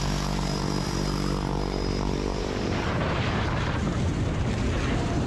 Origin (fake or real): fake